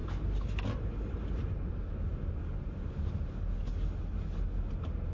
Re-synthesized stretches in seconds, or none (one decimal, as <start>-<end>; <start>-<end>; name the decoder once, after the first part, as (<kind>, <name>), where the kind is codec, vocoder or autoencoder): none